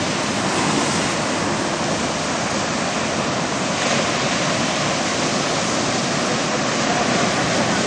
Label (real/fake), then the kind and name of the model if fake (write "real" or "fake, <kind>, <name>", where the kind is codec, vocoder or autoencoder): real